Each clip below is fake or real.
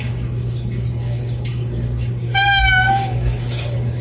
fake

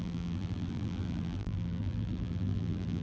fake